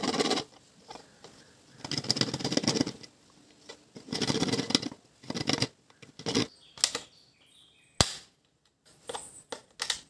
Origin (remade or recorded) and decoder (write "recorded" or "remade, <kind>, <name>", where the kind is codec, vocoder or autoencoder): recorded